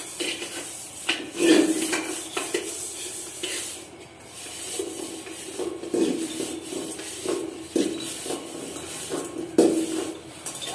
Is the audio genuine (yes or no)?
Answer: yes